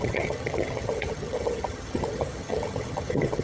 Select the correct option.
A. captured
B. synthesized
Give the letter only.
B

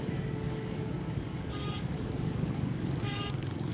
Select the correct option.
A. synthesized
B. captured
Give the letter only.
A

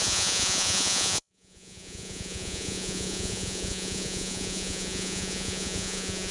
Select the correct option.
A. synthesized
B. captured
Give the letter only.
A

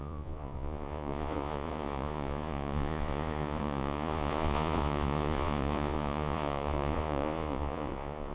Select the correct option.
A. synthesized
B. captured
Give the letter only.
A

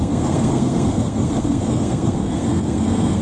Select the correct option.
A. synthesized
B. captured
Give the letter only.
A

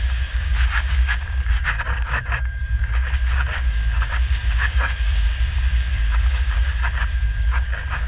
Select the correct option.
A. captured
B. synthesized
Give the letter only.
B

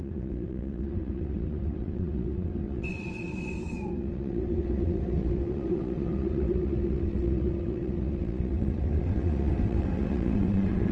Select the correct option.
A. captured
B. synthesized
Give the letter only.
B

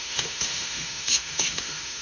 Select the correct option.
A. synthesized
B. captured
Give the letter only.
A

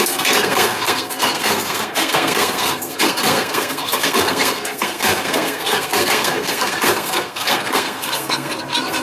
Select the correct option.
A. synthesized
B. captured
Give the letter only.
A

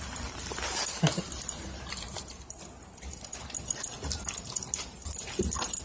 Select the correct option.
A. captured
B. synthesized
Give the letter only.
A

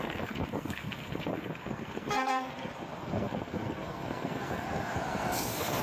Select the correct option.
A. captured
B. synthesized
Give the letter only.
B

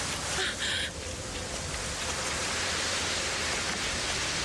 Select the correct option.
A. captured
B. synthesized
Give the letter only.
A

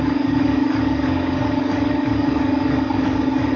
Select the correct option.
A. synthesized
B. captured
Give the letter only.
A